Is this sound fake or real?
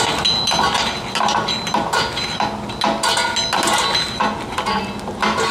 real